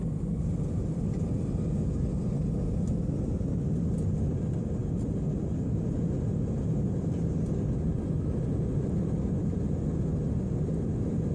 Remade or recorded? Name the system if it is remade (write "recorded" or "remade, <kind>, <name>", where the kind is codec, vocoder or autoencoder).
recorded